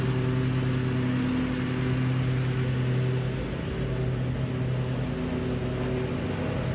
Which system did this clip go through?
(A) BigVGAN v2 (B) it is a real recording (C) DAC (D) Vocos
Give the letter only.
B